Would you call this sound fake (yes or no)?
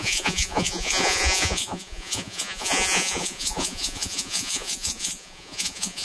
yes